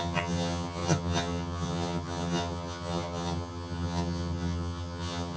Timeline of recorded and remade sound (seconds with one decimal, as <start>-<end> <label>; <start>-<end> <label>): 0.0-5.4 remade